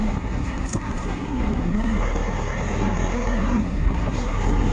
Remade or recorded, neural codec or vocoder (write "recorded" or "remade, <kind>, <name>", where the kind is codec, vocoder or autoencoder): remade, codec, SNAC